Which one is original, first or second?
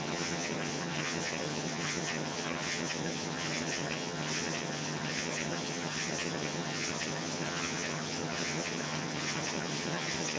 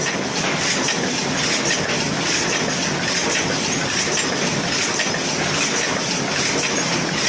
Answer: second